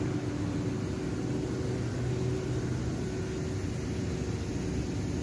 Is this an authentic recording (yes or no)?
yes